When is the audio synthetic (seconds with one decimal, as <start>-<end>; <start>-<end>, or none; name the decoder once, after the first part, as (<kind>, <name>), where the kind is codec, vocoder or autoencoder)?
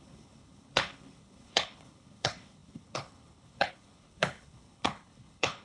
0.0-5.6 (codec, HILCodec)